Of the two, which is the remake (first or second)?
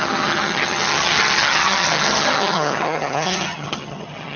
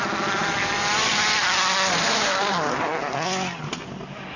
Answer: first